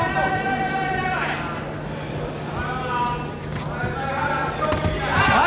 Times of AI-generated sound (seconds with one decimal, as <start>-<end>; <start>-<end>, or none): none